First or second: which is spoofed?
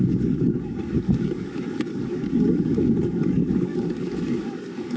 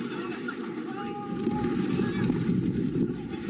first